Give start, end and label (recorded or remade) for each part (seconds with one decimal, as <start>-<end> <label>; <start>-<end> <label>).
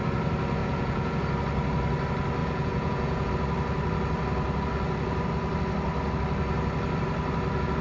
0.0-0.6 recorded; 0.6-1.2 remade; 1.2-2.4 recorded; 2.4-3.3 remade; 3.3-7.8 recorded